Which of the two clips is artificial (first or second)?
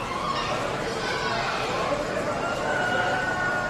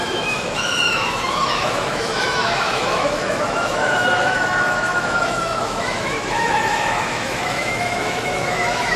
second